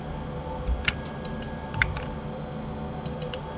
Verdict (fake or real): real